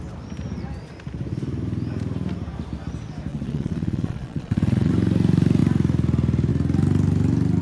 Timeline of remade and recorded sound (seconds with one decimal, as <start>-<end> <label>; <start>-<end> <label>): 0.0-3.3 recorded; 3.3-4.9 remade; 4.9-7.6 recorded